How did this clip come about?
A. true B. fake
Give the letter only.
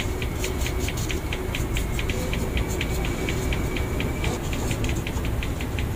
A